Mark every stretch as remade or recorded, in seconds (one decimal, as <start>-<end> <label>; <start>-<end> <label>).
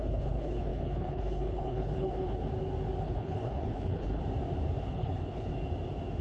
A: 0.0-2.4 remade; 2.4-3.0 recorded; 3.0-4.2 remade; 4.2-4.8 recorded; 4.8-5.5 remade; 5.5-6.2 recorded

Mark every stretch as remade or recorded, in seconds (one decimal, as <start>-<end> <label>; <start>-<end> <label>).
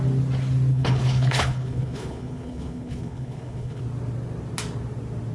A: 0.0-0.7 recorded; 0.7-3.8 remade; 3.8-5.3 recorded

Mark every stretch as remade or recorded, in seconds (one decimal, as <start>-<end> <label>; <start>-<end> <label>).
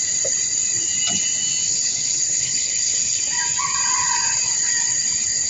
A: 0.0-1.7 recorded; 1.7-3.2 remade; 3.2-5.5 recorded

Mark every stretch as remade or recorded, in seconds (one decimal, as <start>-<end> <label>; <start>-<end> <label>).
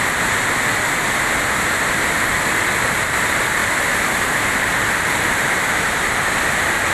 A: 0.0-6.9 recorded